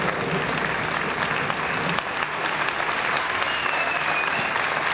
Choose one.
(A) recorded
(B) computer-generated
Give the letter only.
A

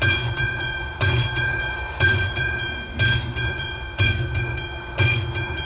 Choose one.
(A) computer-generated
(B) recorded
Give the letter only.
A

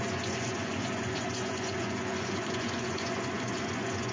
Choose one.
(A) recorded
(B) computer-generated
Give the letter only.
B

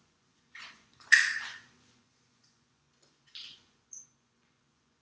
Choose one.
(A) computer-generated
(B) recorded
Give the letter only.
A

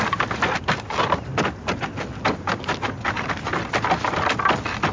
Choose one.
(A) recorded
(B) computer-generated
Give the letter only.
A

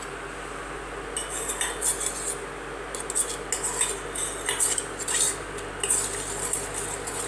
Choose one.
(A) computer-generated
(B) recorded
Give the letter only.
B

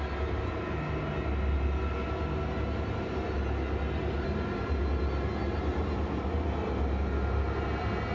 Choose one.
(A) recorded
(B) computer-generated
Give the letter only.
A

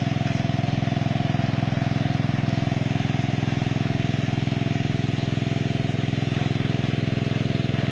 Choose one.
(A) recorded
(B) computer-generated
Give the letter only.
A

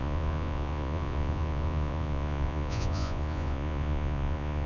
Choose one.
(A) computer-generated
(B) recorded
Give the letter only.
A